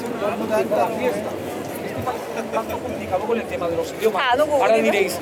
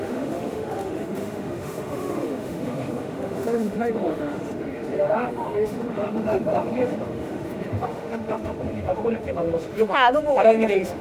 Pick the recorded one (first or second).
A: first